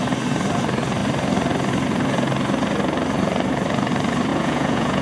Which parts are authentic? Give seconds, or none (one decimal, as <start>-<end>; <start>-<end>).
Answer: 0.0-4.3

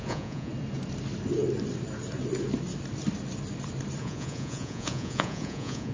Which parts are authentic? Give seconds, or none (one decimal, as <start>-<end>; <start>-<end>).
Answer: 0.5-4.0